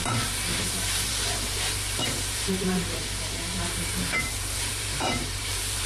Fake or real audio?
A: fake